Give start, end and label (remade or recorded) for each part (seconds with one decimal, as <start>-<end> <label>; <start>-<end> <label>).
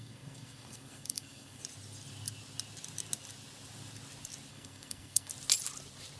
0.0-1.6 remade; 1.6-4.5 recorded; 4.5-5.3 remade; 5.3-6.2 recorded